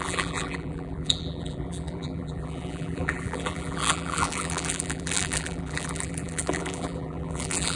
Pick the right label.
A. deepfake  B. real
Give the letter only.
A